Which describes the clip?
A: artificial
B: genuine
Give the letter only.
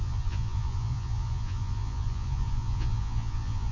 A